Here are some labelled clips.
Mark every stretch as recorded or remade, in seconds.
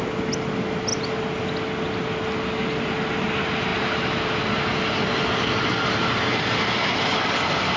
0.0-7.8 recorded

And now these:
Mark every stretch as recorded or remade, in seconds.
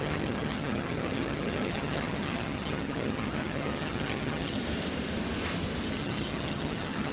0.0-4.6 remade; 4.6-5.9 recorded; 5.9-7.1 remade